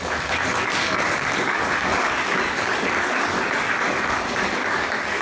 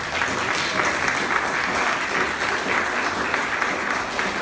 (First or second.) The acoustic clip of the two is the second